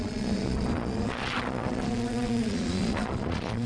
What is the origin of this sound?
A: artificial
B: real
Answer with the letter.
A